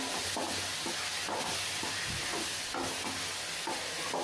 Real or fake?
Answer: real